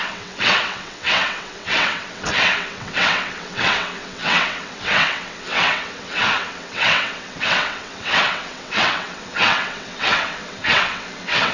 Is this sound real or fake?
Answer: fake